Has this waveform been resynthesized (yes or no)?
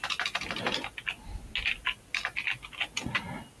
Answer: no